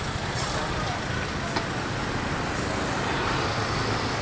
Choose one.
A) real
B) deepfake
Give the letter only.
A